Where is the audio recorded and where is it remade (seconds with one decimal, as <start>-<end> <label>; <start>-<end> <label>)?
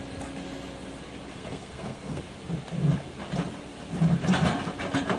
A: 0.0-1.3 recorded; 1.3-2.2 remade; 2.2-5.2 recorded